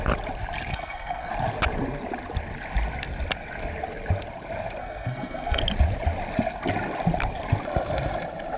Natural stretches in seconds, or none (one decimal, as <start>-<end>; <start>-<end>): 0.0-0.7; 1.3-4.8; 5.6-8.6